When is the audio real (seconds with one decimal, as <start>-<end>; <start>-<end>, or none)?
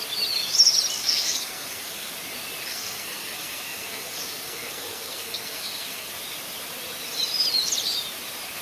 0.0-1.0; 2.1-2.7; 6.1-8.6